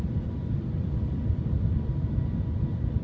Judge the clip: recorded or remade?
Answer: recorded